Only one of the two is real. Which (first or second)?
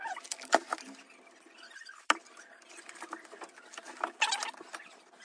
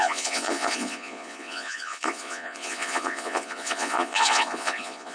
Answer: first